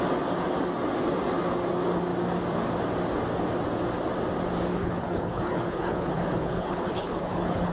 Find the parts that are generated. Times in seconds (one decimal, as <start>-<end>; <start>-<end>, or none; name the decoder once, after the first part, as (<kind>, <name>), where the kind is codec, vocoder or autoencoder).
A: 4.7-7.7 (codec, HILCodec)